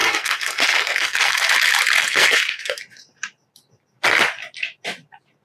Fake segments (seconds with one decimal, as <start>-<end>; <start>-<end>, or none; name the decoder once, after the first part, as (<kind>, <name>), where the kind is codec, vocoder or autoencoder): 0.0-1.5 (codec, SNAC); 2.0-2.8